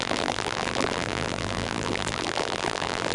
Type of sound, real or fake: fake